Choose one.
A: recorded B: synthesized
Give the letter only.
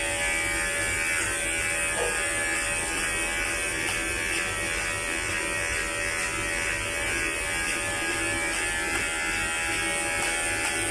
A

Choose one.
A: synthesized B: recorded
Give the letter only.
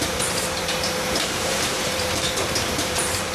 A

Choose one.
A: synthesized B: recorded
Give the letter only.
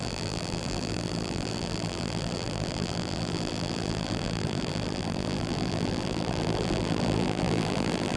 A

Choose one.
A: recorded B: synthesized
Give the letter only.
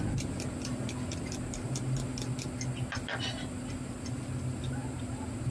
A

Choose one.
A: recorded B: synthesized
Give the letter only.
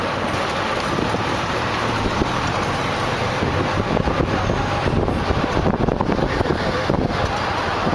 B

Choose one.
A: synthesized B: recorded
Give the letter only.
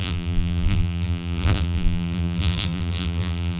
A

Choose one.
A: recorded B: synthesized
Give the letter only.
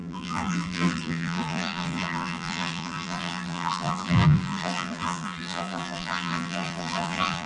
B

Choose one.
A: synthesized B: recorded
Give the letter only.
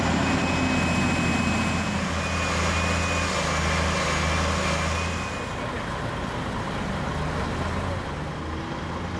B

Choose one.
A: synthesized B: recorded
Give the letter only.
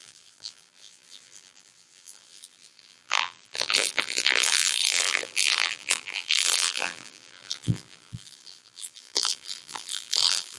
A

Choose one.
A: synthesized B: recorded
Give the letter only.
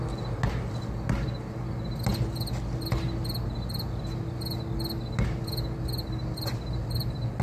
B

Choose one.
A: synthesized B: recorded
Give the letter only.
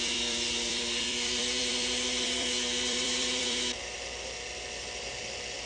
A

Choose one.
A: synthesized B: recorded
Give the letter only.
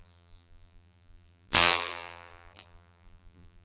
A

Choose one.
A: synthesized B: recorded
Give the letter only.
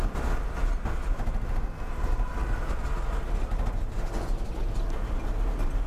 B